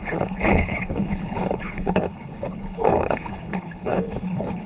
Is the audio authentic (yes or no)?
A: no